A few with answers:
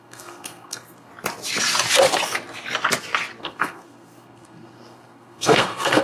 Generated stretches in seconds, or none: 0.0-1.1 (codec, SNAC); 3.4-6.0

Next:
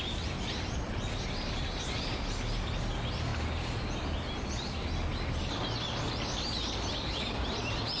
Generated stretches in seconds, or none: none

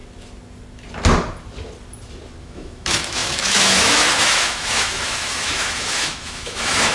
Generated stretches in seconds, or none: 2.4-6.9 (autoencoder, DAC-VAE)

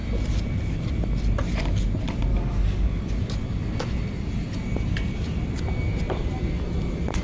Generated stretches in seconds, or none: 2.3-3.1 (codec, DAC)

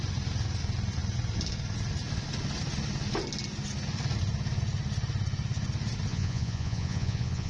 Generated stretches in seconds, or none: 6.1-7.5 (vocoder, Vocos)

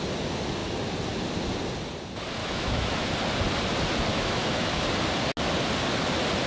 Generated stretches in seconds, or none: 2.4-3.1 (autoencoder, DAC-VAE); 4.1-4.8

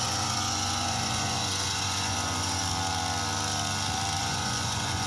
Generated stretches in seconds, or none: 0.0-2.6 (vocoder, Vocos); 4.2-5.1